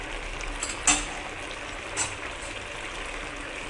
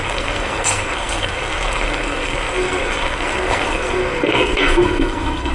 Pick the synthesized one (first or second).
second